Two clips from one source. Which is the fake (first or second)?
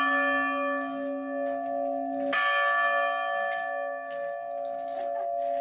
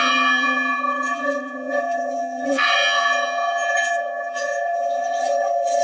second